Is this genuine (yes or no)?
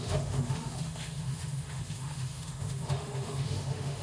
no